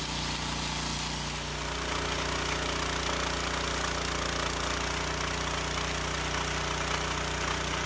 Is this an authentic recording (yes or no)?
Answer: yes